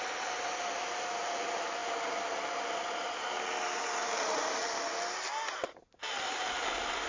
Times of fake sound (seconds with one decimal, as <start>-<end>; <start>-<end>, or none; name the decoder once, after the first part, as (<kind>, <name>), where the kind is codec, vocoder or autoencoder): none